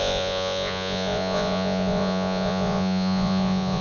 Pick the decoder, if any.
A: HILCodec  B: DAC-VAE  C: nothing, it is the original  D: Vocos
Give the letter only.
D